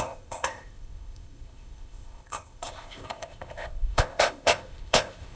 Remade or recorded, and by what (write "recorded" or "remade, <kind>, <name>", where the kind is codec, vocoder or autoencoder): remade, codec, ZipCodec